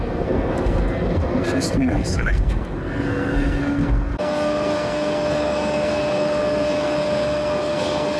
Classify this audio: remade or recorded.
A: remade